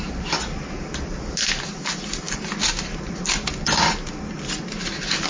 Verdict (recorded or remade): recorded